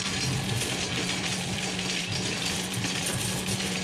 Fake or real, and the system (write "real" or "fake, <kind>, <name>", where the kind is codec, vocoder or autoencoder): real